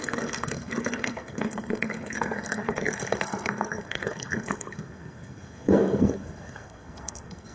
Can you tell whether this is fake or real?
fake